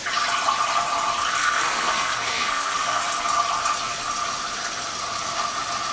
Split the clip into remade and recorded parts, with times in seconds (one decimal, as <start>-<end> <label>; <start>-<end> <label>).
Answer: 0.0-1.4 recorded; 1.4-3.0 remade; 3.0-5.9 recorded